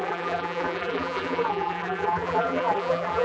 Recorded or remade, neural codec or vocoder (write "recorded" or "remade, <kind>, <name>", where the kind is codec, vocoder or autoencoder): remade, vocoder, BigVGAN v2